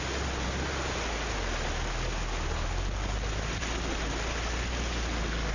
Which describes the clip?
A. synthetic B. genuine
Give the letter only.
B